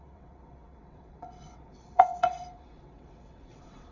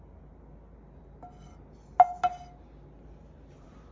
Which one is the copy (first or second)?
first